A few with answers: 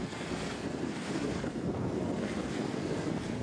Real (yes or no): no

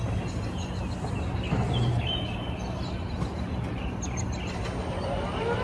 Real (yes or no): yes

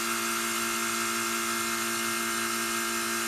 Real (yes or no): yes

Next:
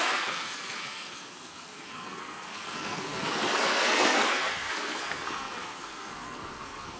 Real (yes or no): no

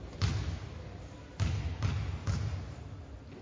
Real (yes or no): yes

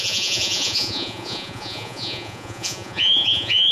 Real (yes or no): no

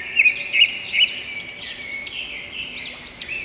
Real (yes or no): yes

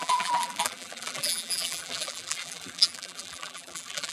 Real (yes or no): no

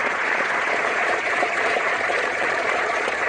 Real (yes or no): no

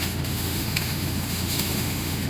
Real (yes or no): no